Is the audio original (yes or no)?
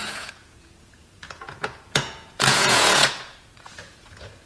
no